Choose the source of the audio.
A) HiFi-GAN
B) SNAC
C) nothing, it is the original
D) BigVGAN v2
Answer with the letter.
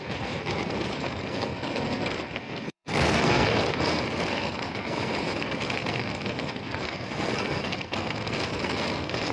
B